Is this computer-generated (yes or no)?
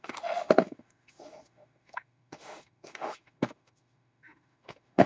yes